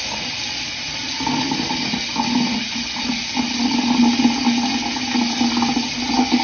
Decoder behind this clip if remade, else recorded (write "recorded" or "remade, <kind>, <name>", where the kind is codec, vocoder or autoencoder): recorded